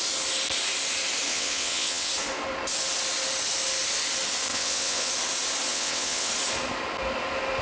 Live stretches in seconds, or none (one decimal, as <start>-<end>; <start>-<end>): 0.0-1.3; 2.1-4.5; 5.1-5.7; 6.3-7.6